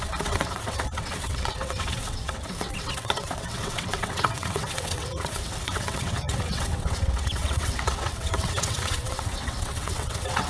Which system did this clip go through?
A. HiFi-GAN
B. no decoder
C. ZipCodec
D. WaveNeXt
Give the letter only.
D